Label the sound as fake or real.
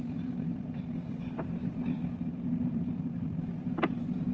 fake